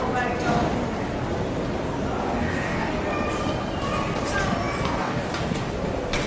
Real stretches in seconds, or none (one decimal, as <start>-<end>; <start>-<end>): 0.0-2.4; 3.0-5.0; 5.7-6.3